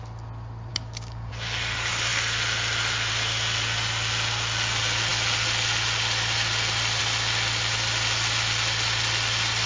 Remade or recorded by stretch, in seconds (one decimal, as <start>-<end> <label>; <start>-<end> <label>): 0.0-0.7 recorded; 0.7-1.3 remade; 1.3-9.7 recorded